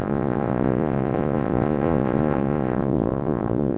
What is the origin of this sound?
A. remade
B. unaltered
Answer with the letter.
A